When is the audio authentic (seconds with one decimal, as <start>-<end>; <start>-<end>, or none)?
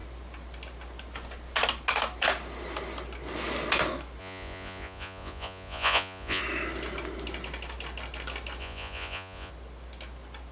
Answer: 0.0-4.2; 6.4-8.6; 9.5-10.5